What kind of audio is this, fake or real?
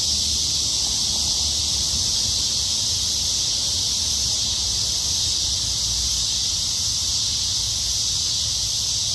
real